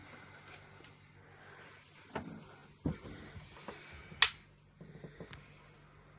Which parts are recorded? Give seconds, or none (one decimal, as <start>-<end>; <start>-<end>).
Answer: 0.0-6.2